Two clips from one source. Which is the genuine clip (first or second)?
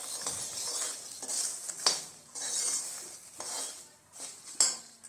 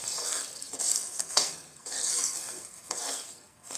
first